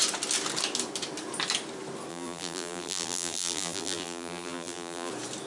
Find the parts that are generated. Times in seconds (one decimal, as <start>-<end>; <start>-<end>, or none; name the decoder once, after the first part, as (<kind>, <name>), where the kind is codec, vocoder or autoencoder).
2.1-5.1 (vocoder, BigVGAN v2)